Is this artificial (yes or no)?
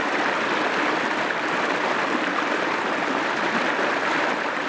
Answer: no